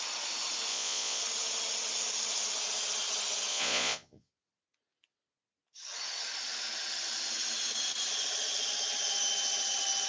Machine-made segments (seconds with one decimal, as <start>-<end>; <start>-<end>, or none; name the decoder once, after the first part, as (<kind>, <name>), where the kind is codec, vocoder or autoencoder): 0.7-1.2 (vocoder, Vocos); 3.5-4.3